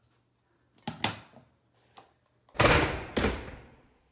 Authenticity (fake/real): real